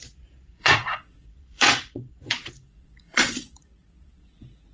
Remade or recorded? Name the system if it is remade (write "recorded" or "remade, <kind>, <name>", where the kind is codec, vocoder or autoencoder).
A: remade, vocoder, Vocos